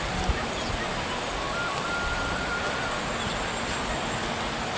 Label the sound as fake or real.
real